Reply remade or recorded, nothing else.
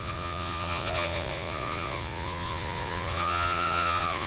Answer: remade